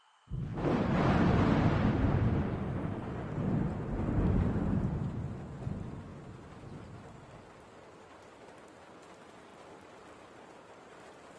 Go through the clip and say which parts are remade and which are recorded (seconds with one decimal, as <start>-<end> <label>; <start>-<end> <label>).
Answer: 0.0-9.5 recorded; 9.5-11.0 remade; 11.0-11.4 recorded

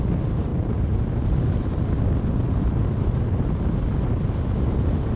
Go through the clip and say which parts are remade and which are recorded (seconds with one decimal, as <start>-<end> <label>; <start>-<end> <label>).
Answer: 0.0-5.2 recorded

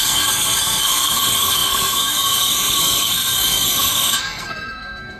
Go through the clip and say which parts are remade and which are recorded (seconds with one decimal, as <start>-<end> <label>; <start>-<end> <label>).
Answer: 0.0-5.2 remade

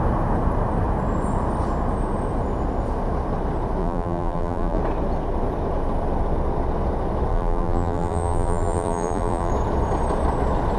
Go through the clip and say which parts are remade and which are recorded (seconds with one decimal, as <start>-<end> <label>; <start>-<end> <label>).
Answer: 0.0-3.8 recorded; 3.8-4.8 remade; 4.8-7.3 recorded; 7.3-9.5 remade; 9.5-10.8 recorded

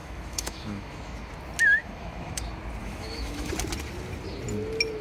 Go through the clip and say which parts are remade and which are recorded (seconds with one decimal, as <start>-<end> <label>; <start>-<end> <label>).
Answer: 0.0-1.3 remade; 1.3-1.8 recorded; 1.8-2.4 remade; 2.4-2.8 recorded; 2.8-3.5 remade; 3.5-5.0 recorded

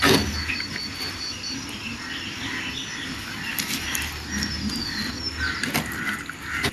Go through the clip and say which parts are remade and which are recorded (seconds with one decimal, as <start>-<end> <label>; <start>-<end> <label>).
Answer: 0.0-6.7 recorded

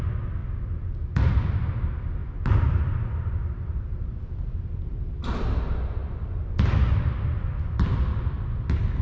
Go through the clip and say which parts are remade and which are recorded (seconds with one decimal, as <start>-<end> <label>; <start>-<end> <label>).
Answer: 0.0-9.0 recorded